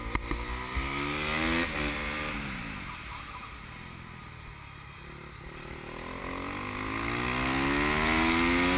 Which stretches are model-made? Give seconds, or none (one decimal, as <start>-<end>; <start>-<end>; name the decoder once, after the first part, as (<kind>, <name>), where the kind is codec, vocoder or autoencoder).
none